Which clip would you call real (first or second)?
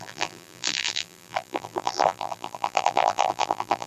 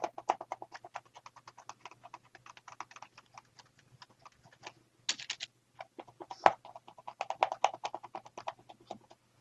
second